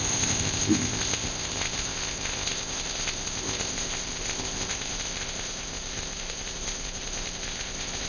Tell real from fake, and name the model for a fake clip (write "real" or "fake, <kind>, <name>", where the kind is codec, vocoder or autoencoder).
fake, codec, ZipCodec